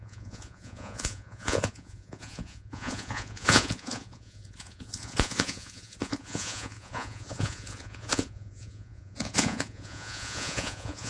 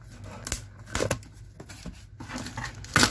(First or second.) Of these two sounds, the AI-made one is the first